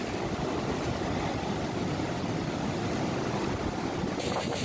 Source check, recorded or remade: recorded